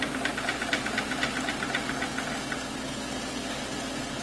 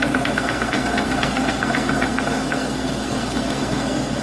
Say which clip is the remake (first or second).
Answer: second